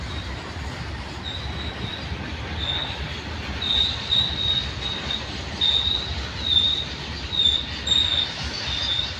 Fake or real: real